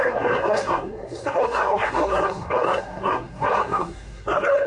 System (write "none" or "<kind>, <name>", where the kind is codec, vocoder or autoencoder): codec, SNAC